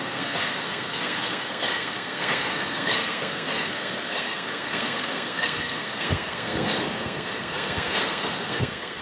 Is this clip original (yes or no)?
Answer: no